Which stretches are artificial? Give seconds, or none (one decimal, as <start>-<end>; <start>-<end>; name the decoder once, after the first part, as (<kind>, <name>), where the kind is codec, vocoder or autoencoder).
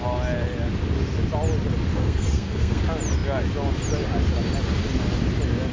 1.9-2.8 (codec, SNAC)